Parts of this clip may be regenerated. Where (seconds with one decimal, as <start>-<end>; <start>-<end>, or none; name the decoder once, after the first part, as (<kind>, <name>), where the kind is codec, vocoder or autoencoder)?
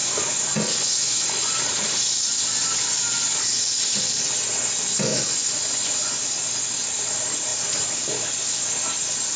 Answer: 0.0-1.6 (vocoder, Vocos); 5.1-6.2